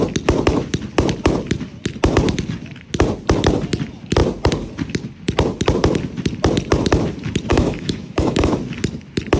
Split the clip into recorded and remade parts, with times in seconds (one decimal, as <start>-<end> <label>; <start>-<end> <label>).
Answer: 0.0-7.5 recorded; 7.5-8.5 remade; 8.5-9.4 recorded